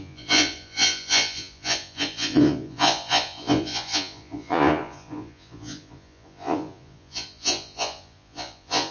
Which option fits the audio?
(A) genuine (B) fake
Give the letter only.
B